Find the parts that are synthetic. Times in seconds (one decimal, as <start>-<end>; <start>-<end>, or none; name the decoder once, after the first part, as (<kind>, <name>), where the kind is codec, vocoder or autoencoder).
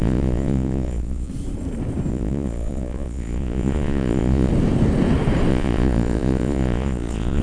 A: 0.0-1.3 (vocoder, Vocos); 2.1-4.5; 5.5-7.4